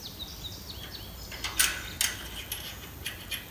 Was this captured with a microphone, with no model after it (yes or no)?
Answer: yes